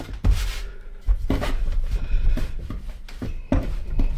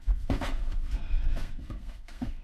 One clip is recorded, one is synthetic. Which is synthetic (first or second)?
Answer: second